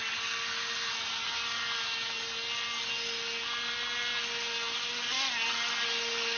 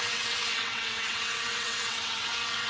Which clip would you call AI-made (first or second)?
second